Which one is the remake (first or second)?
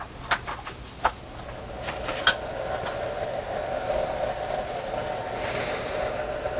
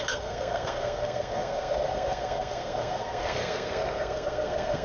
second